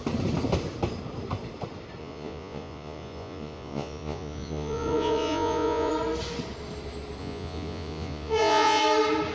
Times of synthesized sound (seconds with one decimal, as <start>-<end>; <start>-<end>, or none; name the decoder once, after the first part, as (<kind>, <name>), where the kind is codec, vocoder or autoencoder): 2.0-5.9 (vocoder, Vocos); 7.2-8.8